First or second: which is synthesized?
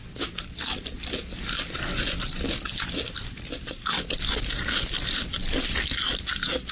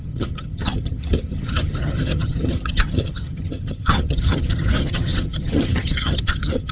second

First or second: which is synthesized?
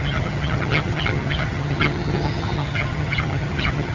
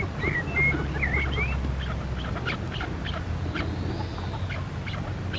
first